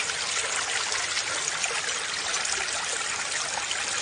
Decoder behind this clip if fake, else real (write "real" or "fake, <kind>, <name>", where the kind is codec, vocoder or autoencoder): real